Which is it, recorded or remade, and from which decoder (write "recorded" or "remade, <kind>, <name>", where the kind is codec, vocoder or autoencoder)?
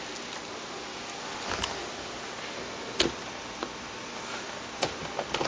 recorded